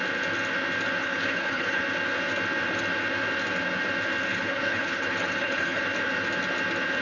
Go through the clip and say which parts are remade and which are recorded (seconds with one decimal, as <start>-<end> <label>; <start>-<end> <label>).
0.0-1.0 recorded; 1.0-1.8 remade; 1.8-4.3 recorded; 4.3-5.8 remade; 5.8-7.0 recorded